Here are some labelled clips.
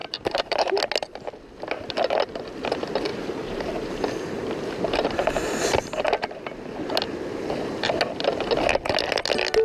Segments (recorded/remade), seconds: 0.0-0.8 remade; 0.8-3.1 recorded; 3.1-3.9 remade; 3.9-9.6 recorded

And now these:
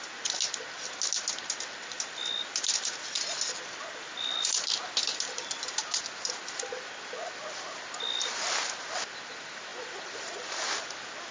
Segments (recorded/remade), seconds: 0.0-11.3 recorded